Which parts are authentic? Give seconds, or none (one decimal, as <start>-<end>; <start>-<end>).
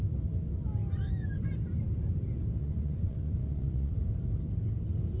0.0-2.6; 3.9-5.2